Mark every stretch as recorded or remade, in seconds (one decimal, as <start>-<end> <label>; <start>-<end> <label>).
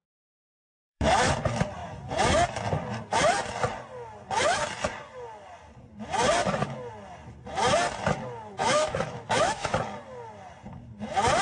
0.0-0.4 recorded; 0.4-1.3 remade; 1.3-8.6 recorded; 8.6-9.7 remade; 9.7-11.4 recorded